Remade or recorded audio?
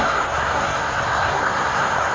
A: remade